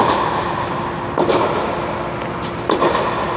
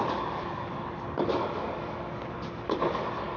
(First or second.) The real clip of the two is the first